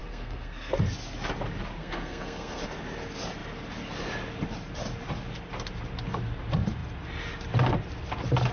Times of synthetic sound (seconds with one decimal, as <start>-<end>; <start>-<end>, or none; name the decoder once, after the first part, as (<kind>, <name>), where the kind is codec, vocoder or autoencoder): 0.0-0.7 (codec, SNAC); 1.8-2.6